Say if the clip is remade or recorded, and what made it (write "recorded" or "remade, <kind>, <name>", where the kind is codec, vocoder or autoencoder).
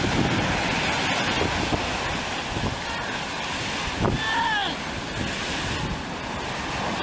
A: recorded